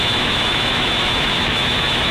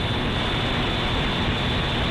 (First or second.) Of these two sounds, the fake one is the first